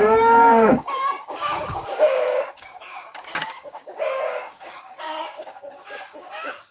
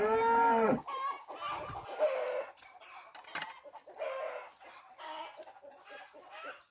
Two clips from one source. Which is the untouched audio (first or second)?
second